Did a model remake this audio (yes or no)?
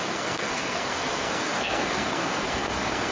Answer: yes